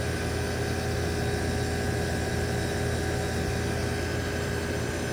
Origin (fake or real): real